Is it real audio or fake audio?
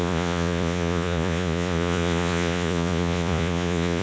fake